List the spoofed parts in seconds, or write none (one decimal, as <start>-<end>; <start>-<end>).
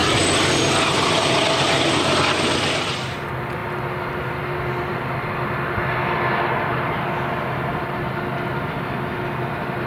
none